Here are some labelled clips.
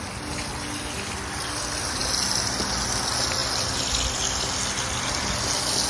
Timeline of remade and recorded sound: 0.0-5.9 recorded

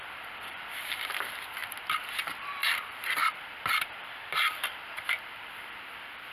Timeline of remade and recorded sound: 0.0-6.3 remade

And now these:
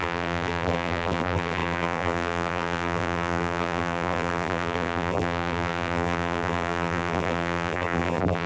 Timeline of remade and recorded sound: 0.0-8.5 remade

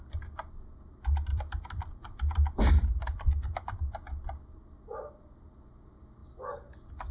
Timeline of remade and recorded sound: 0.0-1.3 recorded; 1.3-5.6 remade; 5.6-7.1 recorded

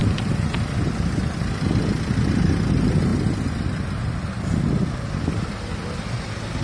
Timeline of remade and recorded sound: 0.0-6.6 recorded

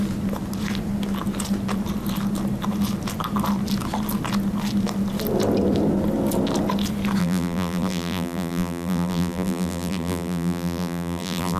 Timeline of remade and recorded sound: 0.0-7.2 recorded; 7.2-11.6 remade